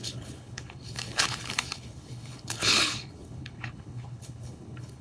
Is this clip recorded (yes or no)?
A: no